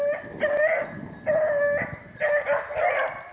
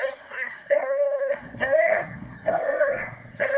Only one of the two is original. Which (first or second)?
first